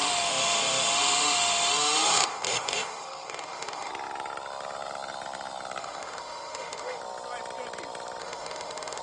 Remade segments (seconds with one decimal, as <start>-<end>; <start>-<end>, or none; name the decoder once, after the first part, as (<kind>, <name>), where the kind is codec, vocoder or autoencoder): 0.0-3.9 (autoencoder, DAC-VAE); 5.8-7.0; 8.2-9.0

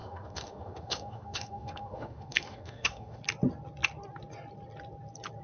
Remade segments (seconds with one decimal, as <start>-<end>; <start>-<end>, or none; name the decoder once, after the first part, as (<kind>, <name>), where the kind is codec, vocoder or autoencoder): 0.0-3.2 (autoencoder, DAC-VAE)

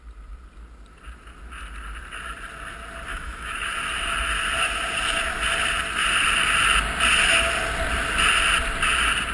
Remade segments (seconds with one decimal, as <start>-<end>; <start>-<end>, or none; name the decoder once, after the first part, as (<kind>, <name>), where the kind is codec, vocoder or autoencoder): 3.1-3.7 (autoencoder, DAC-VAE)